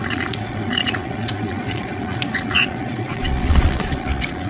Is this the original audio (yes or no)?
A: no